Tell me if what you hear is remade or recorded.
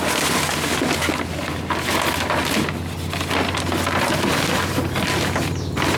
recorded